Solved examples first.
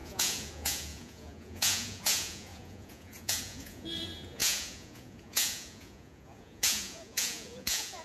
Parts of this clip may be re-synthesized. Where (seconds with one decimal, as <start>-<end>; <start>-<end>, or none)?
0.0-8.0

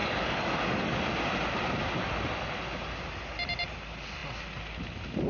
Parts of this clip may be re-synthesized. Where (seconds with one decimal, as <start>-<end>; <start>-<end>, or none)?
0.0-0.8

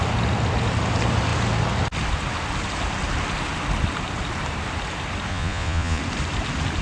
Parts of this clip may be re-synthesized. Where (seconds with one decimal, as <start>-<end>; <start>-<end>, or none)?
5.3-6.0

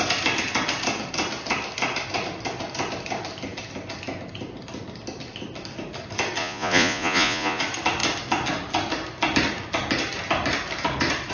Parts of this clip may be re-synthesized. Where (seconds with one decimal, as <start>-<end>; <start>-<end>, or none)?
6.4-7.6